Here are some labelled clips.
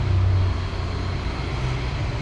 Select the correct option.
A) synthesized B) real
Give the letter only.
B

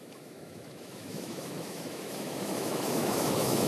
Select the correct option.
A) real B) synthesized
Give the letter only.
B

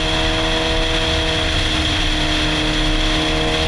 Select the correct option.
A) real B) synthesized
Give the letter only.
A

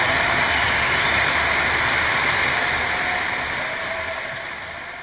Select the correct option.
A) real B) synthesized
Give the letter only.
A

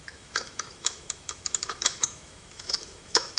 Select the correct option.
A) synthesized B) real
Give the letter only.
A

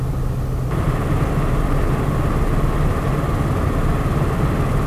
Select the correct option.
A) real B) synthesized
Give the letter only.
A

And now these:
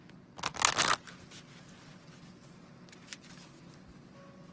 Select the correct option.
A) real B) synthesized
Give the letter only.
A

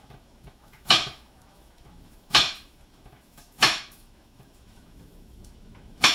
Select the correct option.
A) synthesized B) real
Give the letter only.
A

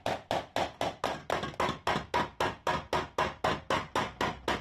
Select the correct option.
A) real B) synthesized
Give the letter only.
A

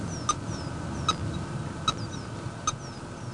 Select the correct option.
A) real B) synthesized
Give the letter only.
A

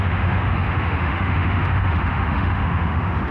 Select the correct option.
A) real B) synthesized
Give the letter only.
B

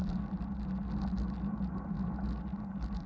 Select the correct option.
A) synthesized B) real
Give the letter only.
B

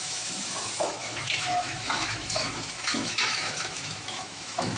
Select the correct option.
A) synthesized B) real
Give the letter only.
A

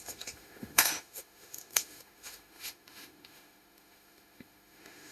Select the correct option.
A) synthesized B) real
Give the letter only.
A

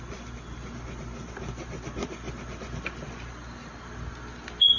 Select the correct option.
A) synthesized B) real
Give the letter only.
B